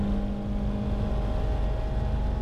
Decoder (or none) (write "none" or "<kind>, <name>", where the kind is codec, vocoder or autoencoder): none